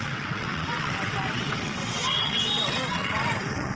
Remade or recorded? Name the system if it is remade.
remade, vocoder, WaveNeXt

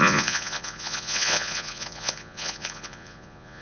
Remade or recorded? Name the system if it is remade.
remade, vocoder, Vocos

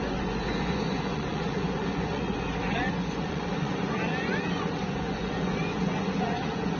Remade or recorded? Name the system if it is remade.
remade, vocoder, Vocos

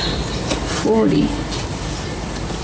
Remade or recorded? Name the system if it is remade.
recorded